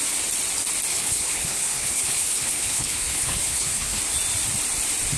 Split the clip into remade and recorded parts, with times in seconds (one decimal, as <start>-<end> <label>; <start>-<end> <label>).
0.0-0.9 recorded; 0.9-4.0 remade; 4.0-5.2 recorded